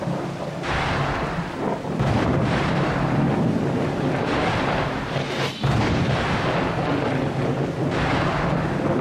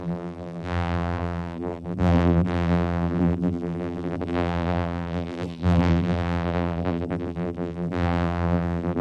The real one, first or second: first